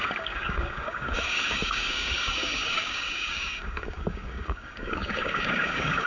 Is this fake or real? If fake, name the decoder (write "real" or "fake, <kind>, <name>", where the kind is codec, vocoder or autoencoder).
fake, codec, DAC